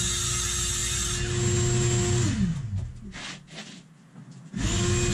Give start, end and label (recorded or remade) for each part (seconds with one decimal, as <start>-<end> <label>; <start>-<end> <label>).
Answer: 0.0-5.1 recorded